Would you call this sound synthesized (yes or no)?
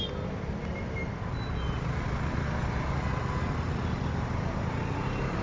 no